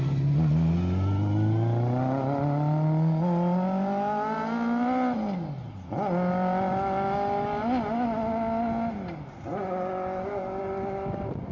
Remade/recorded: recorded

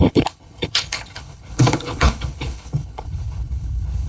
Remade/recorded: remade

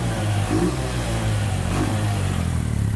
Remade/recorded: remade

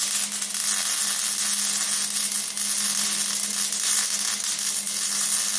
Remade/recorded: recorded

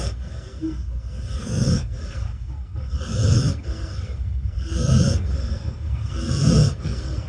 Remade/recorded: remade